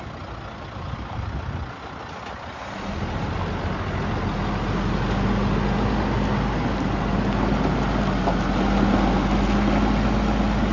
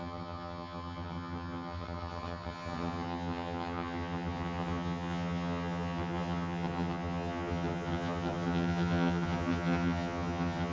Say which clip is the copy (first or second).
second